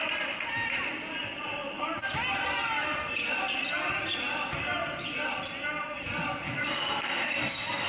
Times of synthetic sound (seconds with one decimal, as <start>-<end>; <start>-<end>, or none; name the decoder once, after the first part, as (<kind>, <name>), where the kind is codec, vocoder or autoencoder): 6.6-7.9 (codec, SNAC)